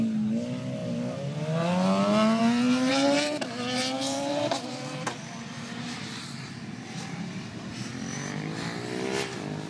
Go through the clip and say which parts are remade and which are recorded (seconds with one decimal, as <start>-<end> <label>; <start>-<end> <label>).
0.0-2.9 recorded; 2.9-7.9 remade; 7.9-9.7 recorded